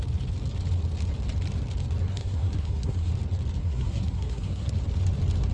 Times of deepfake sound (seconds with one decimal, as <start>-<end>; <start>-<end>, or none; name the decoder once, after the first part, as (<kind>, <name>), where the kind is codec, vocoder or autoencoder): 2.1-3.1 (codec, SNAC); 3.6-4.7